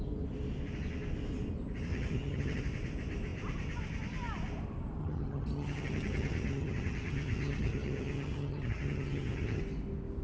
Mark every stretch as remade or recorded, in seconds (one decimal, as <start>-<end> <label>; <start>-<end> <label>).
0.0-1.9 recorded; 1.9-2.6 remade; 2.6-5.0 recorded; 5.0-9.6 remade; 9.6-10.2 recorded